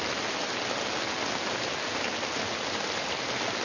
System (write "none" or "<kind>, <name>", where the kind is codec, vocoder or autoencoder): none